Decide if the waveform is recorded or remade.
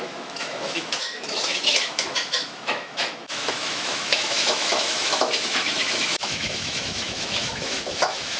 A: remade